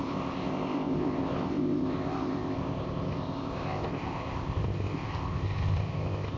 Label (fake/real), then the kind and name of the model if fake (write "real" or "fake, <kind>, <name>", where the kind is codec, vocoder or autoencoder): fake, codec, ZipCodec